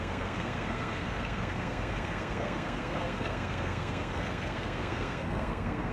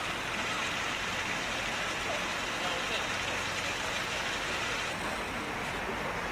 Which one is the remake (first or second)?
first